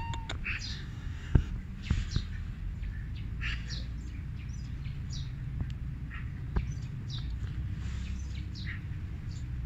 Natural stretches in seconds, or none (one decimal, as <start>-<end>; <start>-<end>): 0.0-0.7; 1.5-9.7